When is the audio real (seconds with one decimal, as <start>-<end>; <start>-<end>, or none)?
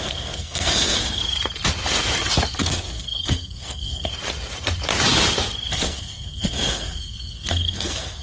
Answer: 1.2-2.6; 4.1-5.7